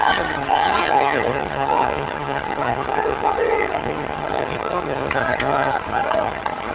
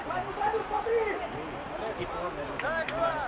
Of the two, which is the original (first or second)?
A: second